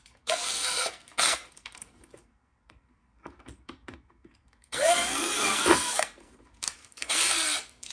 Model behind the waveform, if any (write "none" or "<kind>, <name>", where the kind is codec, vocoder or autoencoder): codec, SNAC